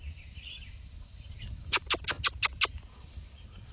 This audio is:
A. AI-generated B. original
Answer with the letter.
B